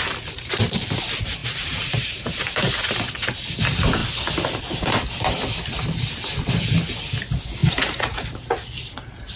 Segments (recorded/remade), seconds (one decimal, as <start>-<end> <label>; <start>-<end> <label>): 0.0-1.4 recorded; 1.4-3.1 remade; 3.1-7.6 recorded; 7.6-8.5 remade; 8.5-9.4 recorded